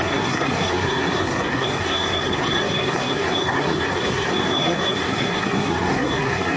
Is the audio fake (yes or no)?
yes